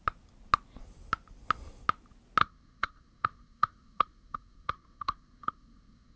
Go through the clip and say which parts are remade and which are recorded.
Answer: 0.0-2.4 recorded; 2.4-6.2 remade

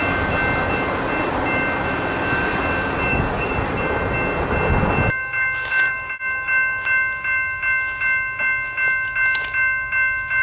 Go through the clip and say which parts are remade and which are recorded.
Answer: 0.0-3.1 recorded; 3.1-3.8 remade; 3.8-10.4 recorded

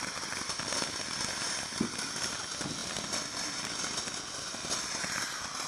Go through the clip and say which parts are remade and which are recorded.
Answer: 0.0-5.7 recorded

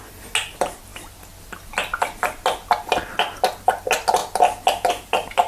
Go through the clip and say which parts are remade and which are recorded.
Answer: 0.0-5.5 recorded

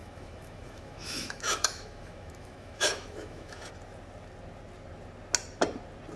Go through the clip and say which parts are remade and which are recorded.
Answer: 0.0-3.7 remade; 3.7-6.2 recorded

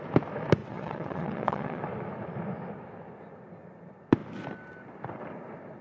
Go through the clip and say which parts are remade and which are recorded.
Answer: 0.0-0.6 recorded; 0.6-1.8 remade; 1.8-5.8 recorded

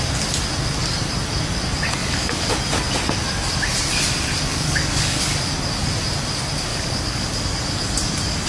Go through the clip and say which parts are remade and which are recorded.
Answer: 0.0-2.0 recorded; 2.0-2.5 remade; 2.5-4.5 recorded; 4.5-5.2 remade; 5.2-6.7 recorded; 6.7-7.3 remade; 7.3-8.5 recorded

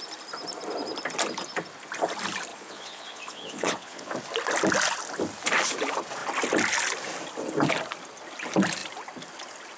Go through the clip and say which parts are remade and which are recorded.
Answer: 0.0-2.5 recorded; 2.5-4.1 remade; 4.1-9.8 recorded